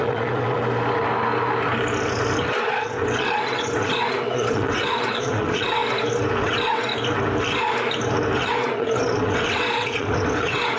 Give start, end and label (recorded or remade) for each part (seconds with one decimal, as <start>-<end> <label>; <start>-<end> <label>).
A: 0.0-0.6 remade; 0.6-2.4 recorded; 2.4-5.8 remade; 5.8-6.4 recorded; 6.4-6.9 remade; 6.9-8.4 recorded; 8.4-10.8 remade